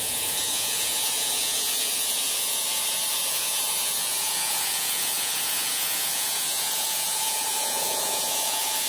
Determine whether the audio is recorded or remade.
remade